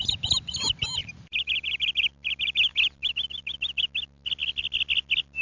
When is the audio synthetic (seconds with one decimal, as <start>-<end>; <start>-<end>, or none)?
1.0-1.9; 2.7-3.8